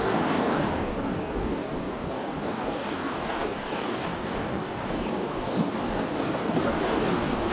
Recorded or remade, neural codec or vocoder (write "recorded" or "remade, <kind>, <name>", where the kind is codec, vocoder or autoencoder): remade, codec, DAC